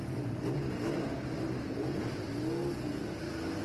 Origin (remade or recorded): recorded